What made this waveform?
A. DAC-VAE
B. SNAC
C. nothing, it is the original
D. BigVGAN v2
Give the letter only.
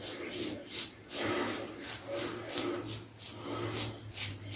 C